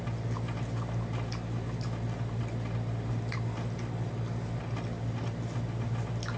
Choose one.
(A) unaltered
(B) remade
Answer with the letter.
A